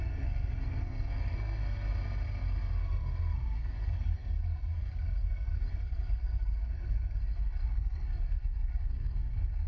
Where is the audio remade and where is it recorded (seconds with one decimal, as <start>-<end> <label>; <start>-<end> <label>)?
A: 0.0-1.6 remade; 1.6-2.8 recorded; 2.8-9.7 remade